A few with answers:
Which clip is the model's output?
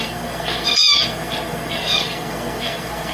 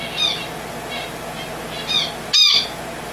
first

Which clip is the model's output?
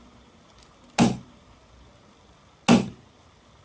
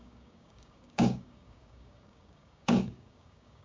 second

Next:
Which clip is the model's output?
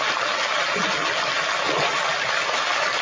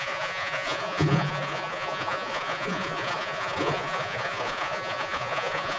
second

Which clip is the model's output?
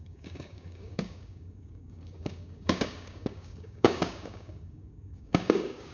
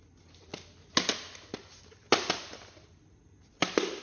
first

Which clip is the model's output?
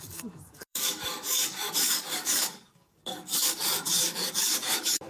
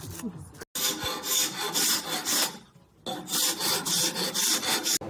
first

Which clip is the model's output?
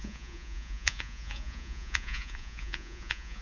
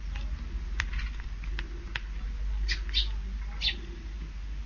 first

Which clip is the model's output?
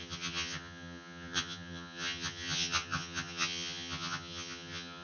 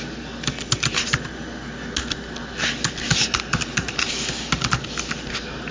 first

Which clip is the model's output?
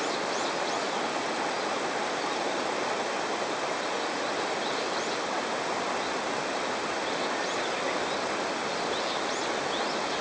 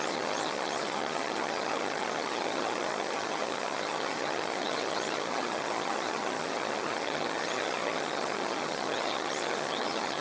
second